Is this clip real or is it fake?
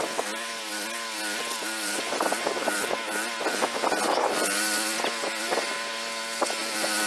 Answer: real